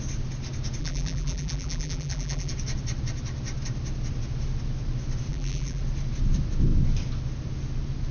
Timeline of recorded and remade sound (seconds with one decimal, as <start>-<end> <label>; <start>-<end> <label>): 0.0-0.8 recorded; 0.8-2.5 remade; 2.5-5.3 recorded; 5.3-5.8 remade; 5.8-8.1 recorded